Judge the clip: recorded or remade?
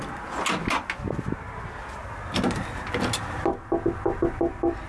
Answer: recorded